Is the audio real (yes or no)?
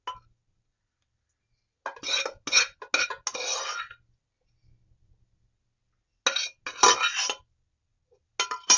yes